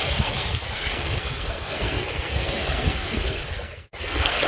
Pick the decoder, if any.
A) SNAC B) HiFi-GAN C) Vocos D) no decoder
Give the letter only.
A